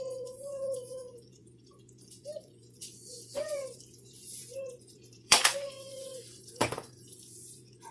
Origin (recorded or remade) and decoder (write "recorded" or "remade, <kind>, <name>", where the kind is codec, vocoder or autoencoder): remade, vocoder, Vocos